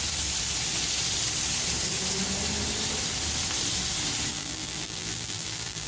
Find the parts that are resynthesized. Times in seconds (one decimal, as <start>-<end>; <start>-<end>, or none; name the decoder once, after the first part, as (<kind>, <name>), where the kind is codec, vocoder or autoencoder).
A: 4.3-5.9 (vocoder, BigVGAN v2)